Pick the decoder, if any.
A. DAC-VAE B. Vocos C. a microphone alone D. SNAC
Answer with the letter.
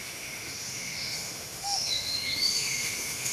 A